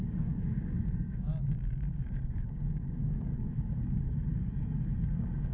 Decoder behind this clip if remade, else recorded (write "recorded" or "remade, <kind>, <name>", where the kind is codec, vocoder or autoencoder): remade, codec, DAC